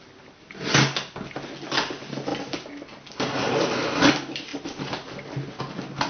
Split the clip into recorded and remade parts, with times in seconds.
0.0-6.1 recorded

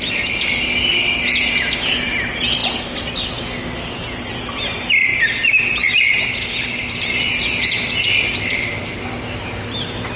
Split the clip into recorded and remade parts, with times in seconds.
0.0-10.2 recorded

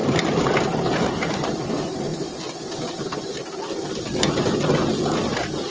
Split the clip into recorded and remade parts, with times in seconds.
0.0-5.7 recorded

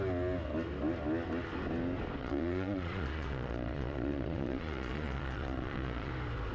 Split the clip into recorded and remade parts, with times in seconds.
0.0-2.2 recorded; 2.2-6.1 remade; 6.1-6.5 recorded